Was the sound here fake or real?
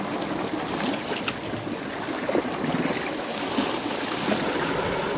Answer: real